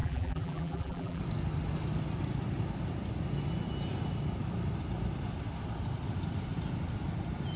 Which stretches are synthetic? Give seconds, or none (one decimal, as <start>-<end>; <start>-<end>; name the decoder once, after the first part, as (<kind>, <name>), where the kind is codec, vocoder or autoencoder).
0.0-1.2 (vocoder, BigVGAN v2)